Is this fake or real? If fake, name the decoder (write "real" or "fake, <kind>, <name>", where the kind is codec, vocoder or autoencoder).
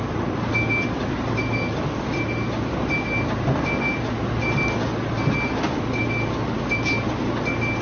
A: real